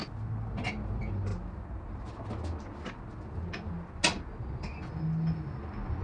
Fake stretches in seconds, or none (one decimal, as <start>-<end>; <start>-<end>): none